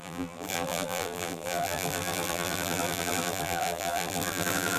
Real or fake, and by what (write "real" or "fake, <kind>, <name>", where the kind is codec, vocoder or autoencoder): fake, vocoder, BigVGAN v2